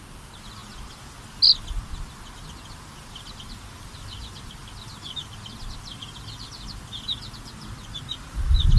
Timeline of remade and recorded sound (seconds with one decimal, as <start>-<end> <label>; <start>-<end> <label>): 0.0-8.8 recorded

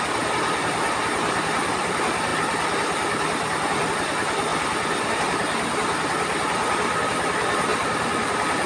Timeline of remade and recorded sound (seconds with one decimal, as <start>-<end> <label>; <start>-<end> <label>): 0.0-8.7 recorded

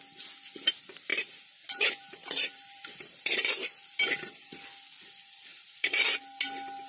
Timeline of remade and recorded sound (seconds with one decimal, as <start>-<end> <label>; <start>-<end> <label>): 0.0-1.1 recorded; 1.1-4.5 remade; 4.5-5.5 recorded; 5.5-6.2 remade; 6.2-6.9 recorded

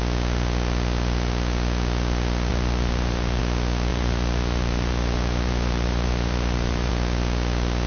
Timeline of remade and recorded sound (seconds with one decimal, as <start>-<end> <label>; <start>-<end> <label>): 0.0-2.5 recorded; 2.5-3.4 remade; 3.4-3.9 recorded; 3.9-6.9 remade; 6.9-7.9 recorded

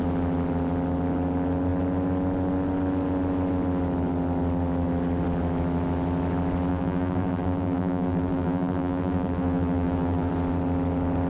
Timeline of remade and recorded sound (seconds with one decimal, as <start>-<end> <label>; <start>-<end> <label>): 0.0-6.7 recorded; 6.7-10.3 remade; 10.3-11.3 recorded

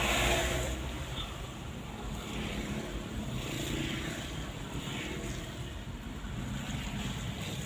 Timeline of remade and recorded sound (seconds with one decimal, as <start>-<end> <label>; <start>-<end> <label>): 0.0-0.4 recorded; 0.4-5.0 remade; 5.0-7.7 recorded

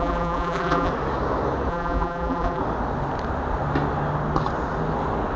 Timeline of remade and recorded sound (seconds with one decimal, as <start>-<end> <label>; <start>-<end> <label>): 0.0-0.9 remade; 0.9-1.7 recorded; 1.7-2.6 remade; 2.6-5.4 recorded

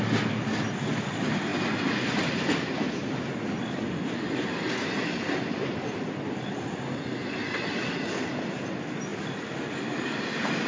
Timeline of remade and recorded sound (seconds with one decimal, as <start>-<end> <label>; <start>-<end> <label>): 0.0-5.6 recorded; 5.6-6.2 remade; 6.2-10.7 recorded